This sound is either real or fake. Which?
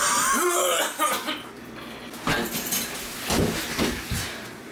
real